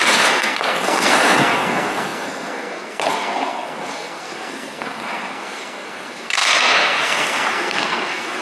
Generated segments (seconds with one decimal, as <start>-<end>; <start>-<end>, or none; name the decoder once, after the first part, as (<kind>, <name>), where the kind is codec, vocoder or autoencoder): 0.0-8.4 (codec, SNAC)